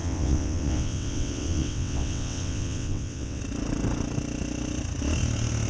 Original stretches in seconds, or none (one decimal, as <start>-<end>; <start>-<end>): 3.4-5.7